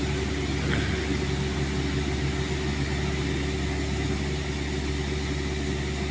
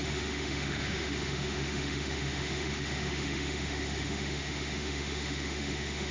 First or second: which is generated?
second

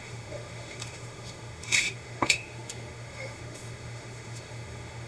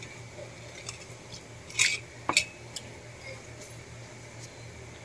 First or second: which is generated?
first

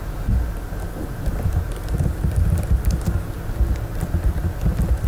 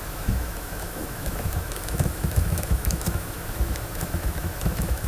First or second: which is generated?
second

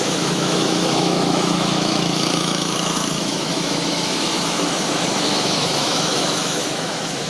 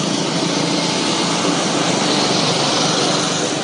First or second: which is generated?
first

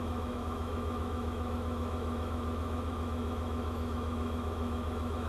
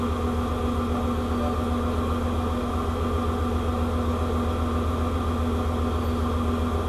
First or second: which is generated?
first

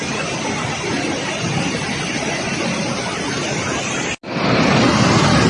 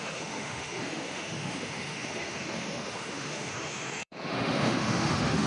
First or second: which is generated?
second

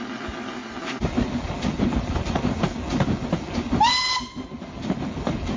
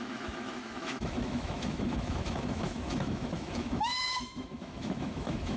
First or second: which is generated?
second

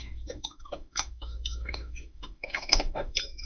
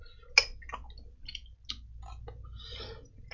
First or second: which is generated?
first